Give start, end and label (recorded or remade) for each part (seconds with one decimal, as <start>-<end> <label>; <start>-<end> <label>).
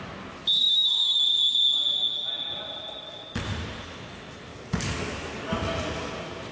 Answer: 0.0-0.6 recorded; 0.6-1.4 remade; 1.4-4.5 recorded; 4.5-5.6 remade; 5.6-6.5 recorded